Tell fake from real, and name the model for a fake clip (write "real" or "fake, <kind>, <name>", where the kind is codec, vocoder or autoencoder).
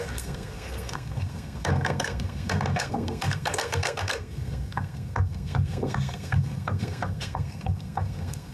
fake, codec, SNAC